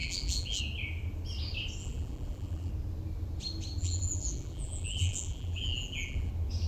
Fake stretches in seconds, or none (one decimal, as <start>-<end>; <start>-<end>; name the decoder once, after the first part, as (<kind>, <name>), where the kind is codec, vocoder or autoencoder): 0.0-0.6 (vocoder, BigVGAN v2); 1.8-2.7; 3.8-6.3